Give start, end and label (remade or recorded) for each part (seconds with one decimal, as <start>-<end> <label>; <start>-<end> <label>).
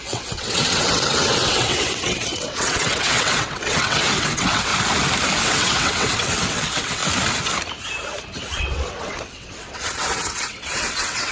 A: 0.0-4.7 remade; 4.7-5.4 recorded; 5.4-7.0 remade; 7.0-8.4 recorded; 8.4-11.3 remade